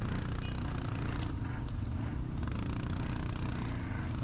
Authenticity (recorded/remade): recorded